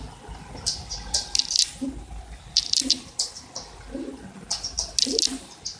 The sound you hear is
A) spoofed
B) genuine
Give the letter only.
B